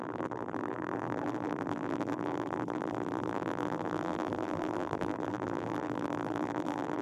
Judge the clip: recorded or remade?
remade